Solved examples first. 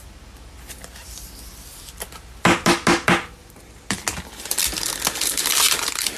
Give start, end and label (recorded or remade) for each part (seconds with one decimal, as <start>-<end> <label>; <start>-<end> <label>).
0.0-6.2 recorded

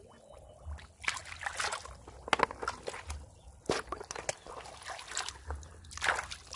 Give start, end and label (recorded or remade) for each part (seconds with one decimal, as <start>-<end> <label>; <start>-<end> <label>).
0.0-6.6 recorded

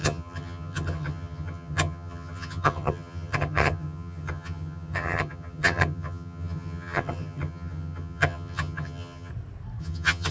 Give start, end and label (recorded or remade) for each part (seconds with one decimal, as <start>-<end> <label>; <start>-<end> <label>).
0.0-9.3 remade; 9.3-9.8 recorded; 9.8-10.3 remade

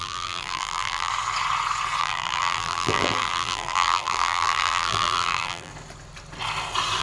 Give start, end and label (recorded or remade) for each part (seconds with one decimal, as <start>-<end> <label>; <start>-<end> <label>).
0.0-1.1 remade; 1.1-2.0 recorded; 2.0-5.7 remade; 5.7-7.0 recorded

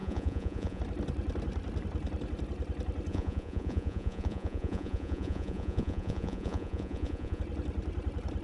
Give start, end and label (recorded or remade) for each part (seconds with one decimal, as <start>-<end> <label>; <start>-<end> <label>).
0.0-0.8 remade; 0.8-3.1 recorded; 3.1-7.4 remade; 7.4-8.4 recorded

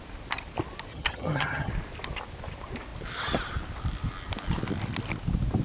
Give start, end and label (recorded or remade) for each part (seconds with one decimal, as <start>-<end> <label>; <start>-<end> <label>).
0.0-0.9 recorded; 0.9-1.7 remade; 1.7-5.6 recorded

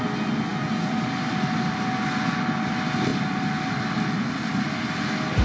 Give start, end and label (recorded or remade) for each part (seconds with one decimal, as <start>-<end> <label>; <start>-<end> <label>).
0.0-5.4 recorded